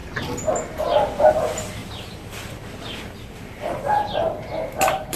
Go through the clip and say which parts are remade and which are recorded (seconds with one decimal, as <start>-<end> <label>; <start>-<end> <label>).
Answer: 0.0-1.3 recorded; 1.3-5.2 remade